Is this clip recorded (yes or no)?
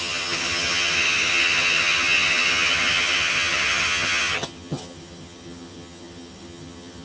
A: no